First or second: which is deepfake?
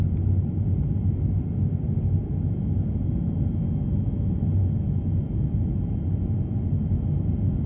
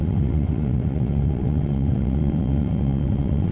second